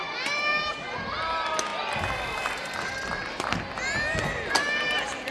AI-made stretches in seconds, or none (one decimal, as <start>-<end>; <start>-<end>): none